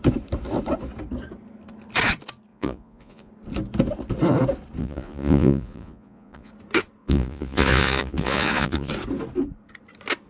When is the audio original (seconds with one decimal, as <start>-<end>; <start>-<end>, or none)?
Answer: 0.0-2.5; 3.3-4.8; 6.5-7.0; 8.9-10.3